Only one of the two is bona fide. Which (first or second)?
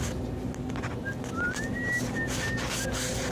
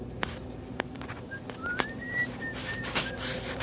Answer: first